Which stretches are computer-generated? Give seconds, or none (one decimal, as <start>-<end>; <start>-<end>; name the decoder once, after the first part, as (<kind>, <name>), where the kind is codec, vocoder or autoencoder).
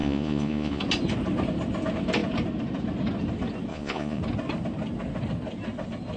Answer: 0.0-0.8 (vocoder, Vocos); 3.7-4.2